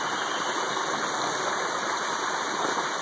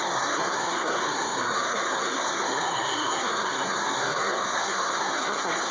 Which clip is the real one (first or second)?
first